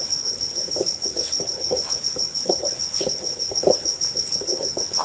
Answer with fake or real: fake